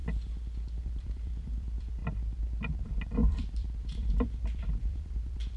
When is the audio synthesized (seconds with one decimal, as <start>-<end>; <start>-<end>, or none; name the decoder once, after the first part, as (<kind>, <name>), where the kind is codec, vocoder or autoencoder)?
0.8-2.0 (vocoder, BigVGAN v2); 2.8-5.6